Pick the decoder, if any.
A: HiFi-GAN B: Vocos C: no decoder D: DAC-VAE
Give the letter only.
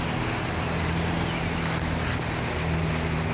C